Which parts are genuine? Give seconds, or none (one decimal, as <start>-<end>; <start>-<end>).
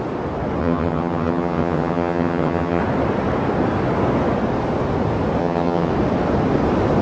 0.0-0.6; 2.8-5.4; 5.9-7.0